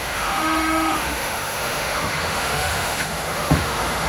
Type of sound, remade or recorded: remade